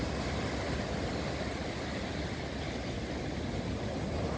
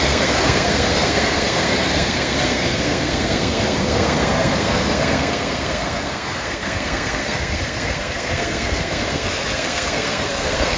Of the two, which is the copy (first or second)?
second